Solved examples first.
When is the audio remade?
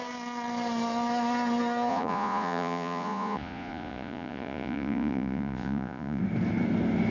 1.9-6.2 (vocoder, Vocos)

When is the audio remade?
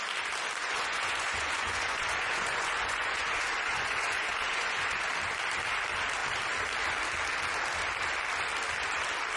0.6-5.1 (vocoder, Vocos)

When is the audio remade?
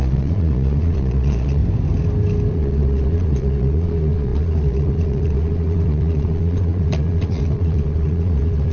0.0-1.6 (vocoder, Vocos); 2.5-8.7